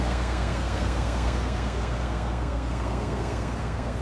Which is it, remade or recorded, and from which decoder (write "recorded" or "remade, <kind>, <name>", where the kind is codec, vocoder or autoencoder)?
remade, codec, SNAC